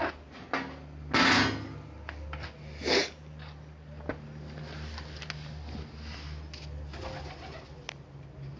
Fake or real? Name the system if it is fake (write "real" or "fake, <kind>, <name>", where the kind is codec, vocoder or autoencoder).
real